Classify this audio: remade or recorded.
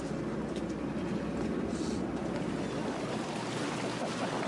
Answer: recorded